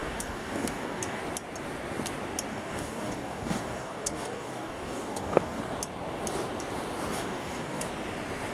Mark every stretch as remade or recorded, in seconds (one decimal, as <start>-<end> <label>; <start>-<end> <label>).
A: 0.0-1.2 remade; 1.2-2.5 recorded; 2.5-5.6 remade; 5.6-7.1 recorded; 7.1-7.8 remade; 7.8-8.5 recorded